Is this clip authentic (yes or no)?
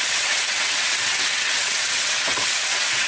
no